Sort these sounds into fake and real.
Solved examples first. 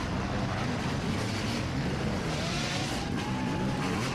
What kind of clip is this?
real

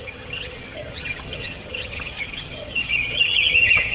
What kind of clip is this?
fake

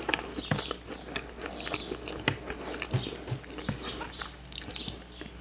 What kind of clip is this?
real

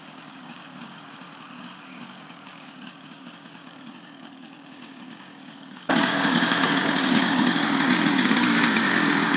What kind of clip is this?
fake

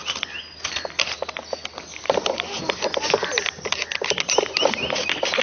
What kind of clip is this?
real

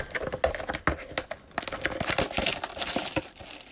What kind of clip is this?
real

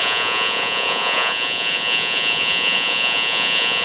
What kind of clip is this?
fake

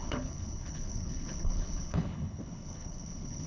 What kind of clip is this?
fake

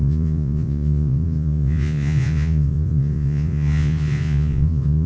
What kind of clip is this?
fake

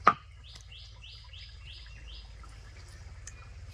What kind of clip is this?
real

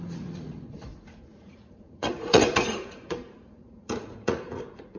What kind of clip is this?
fake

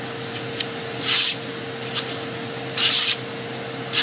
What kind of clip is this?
real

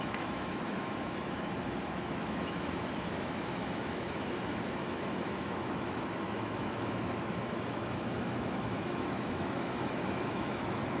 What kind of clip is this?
fake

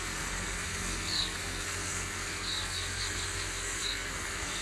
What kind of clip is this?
fake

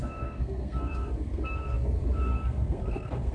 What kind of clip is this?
fake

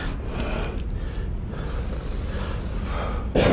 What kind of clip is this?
real